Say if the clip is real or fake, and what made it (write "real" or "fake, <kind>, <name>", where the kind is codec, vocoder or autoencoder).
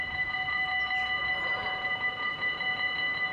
fake, vocoder, Vocos